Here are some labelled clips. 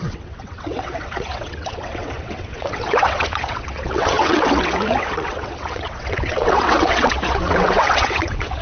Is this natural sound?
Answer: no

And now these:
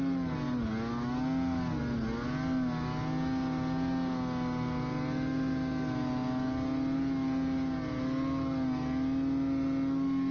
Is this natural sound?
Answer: yes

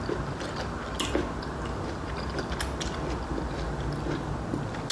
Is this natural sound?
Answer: yes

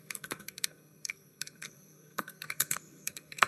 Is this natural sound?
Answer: no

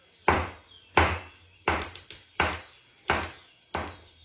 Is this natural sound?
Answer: yes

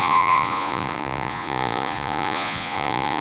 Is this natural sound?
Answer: no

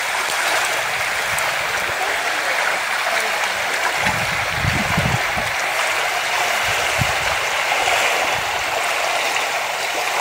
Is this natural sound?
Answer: yes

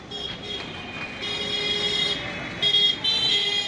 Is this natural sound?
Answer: yes